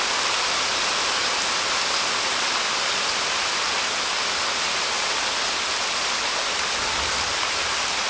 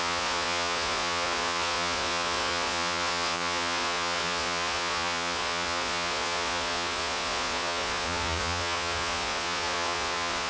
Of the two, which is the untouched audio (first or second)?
first